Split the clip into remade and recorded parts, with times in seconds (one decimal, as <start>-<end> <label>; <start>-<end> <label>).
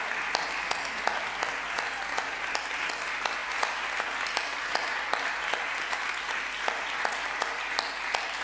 0.0-2.1 recorded; 2.1-2.9 remade; 2.9-8.4 recorded